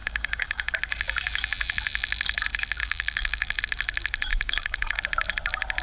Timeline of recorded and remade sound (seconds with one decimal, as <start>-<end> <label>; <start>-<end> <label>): 0.0-0.7 remade; 0.7-2.8 recorded; 2.8-3.6 remade; 3.6-4.3 recorded; 4.3-5.0 remade; 5.0-5.8 recorded